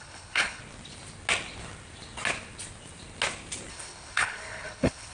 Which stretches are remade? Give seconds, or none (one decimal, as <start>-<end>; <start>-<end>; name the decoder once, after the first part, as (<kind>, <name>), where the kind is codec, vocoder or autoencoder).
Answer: 0.0-0.6 (codec, HILCodec); 3.7-5.1